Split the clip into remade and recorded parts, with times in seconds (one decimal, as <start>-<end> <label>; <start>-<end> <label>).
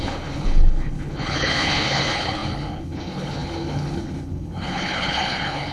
0.0-5.7 remade